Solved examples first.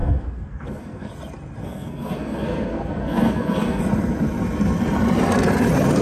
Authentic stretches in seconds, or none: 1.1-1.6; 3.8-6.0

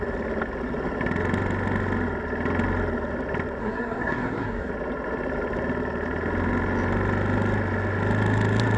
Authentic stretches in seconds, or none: 0.0-3.6; 4.7-8.8

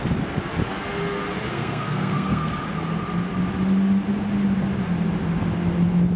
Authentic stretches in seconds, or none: 0.0-1.5; 2.5-6.2